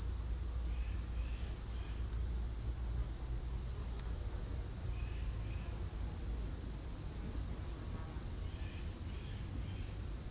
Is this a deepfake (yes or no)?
no